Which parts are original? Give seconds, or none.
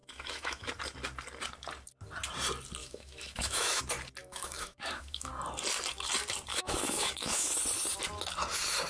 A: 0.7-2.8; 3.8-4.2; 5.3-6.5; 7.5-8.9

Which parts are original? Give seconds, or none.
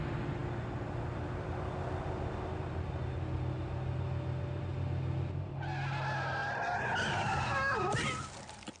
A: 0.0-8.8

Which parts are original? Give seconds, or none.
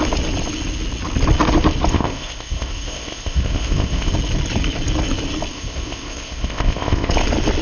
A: 0.0-1.9; 4.1-5.5; 7.1-7.6